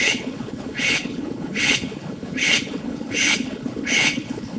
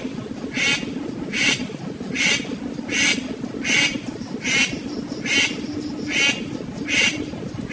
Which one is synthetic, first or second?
first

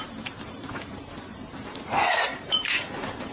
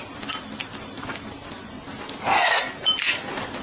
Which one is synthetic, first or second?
first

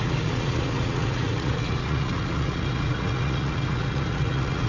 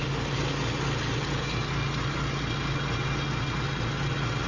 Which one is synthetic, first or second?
first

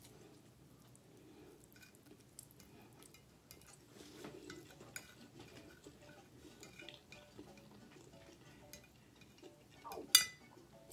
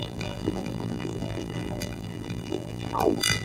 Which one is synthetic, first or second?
second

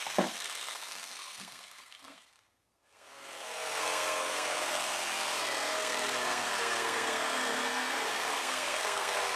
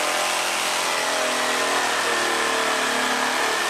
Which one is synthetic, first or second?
first